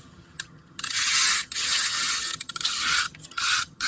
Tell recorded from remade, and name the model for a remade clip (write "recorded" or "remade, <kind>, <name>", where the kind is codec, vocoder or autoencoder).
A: remade, vocoder, HiFi-GAN